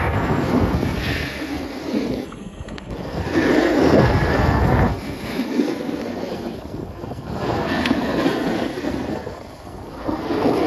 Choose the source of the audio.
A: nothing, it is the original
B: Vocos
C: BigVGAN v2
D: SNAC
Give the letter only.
D